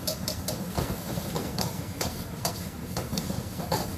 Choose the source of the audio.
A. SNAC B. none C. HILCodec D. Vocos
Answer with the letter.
A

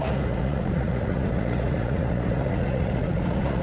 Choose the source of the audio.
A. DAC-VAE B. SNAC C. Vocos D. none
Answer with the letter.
C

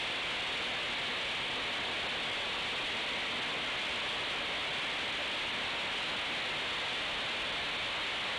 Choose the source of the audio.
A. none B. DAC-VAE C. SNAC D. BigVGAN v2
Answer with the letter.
A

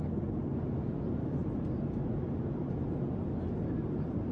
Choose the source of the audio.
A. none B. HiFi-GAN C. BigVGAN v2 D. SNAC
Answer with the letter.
A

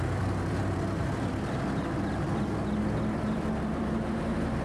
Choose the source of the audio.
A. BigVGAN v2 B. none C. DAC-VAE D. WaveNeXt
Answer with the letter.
A